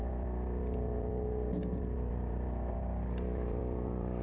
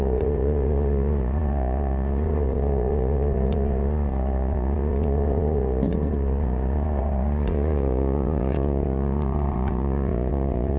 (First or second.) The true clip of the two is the first